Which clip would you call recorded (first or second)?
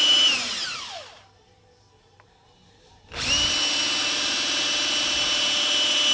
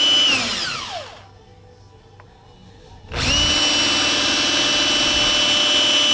second